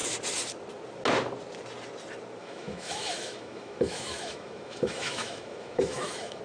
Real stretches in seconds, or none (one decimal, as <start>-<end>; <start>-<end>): 0.0-2.4